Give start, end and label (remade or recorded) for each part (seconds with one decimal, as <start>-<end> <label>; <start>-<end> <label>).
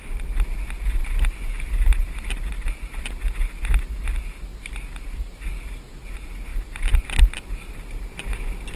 0.0-1.0 recorded; 1.0-3.0 remade; 3.0-4.5 recorded; 4.5-5.4 remade; 5.4-6.5 recorded; 6.5-8.2 remade; 8.2-8.8 recorded